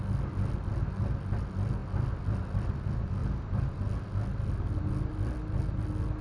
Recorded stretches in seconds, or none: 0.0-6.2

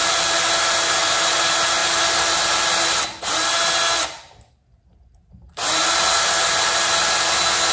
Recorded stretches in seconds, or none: 0.0-7.7

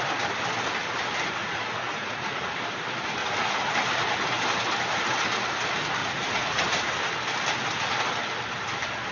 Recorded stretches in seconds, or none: 0.0-1.4; 2.4-3.2; 3.7-6.0; 6.9-9.1

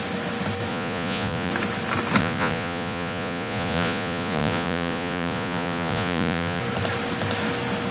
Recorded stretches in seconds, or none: 0.0-0.7; 1.5-2.2; 6.6-7.9